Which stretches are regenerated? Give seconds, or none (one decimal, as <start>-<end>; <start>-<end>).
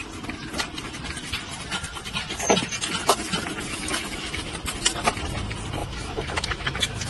3.7-4.5; 5.8-7.1